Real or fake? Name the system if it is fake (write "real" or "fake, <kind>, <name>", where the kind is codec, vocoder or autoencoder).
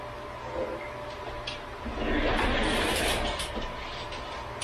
real